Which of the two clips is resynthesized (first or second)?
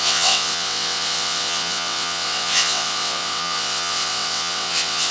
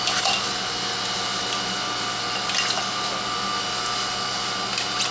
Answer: first